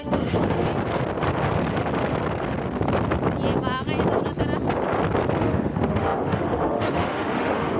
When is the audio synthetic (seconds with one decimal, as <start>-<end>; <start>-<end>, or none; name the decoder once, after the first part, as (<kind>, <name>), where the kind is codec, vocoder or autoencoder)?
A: 0.0-0.7 (autoencoder, DAC-VAE); 5.4-7.8